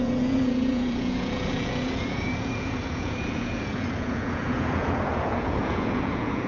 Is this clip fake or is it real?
fake